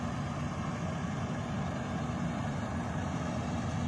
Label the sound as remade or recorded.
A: recorded